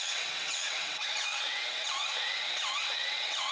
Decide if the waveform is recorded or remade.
remade